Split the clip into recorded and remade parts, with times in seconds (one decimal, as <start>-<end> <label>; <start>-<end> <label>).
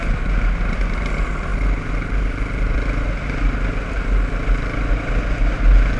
0.0-6.0 recorded